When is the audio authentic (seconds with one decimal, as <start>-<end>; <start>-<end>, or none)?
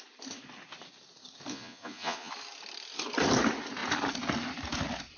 0.0-1.5; 2.3-5.2